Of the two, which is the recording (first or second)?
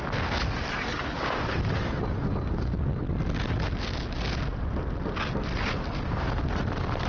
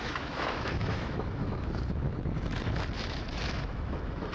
first